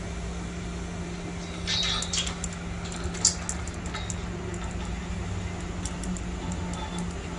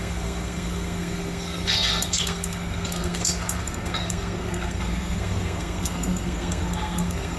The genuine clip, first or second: first